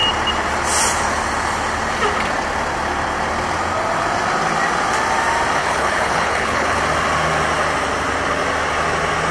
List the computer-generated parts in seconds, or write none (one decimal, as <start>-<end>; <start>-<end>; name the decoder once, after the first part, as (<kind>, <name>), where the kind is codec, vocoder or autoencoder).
5.6-6.8 (codec, HILCodec)